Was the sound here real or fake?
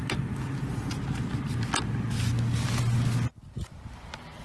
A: real